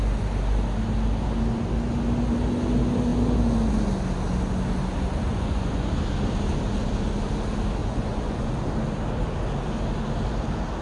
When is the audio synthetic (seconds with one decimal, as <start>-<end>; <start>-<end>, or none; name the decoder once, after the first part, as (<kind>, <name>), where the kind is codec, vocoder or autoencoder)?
5.3-5.9 (vocoder, Vocos); 7.8-8.5